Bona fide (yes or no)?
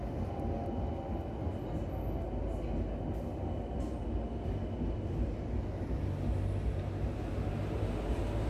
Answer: yes